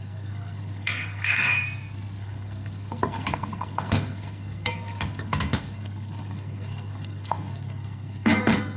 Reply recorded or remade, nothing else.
remade